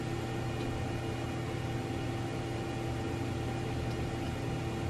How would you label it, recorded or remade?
recorded